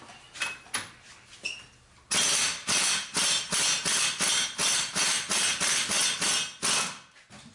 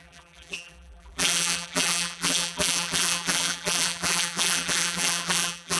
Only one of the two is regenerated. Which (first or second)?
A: second